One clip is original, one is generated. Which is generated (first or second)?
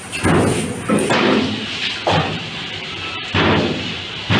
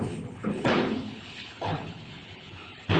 second